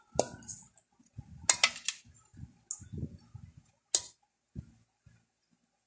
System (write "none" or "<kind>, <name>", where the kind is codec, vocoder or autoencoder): none